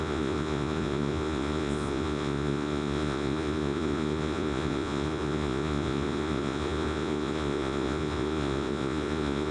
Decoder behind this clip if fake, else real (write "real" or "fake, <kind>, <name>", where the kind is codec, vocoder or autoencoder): fake, vocoder, Vocos